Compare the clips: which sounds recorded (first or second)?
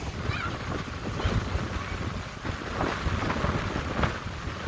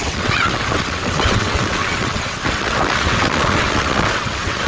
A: first